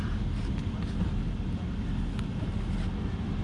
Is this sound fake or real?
real